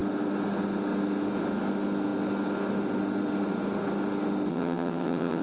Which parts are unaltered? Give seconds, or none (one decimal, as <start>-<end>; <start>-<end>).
0.0-4.5